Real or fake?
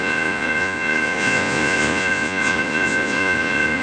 fake